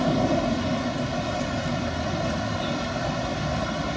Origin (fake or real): real